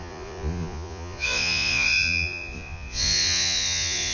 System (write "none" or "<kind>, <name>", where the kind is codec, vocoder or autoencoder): vocoder, Vocos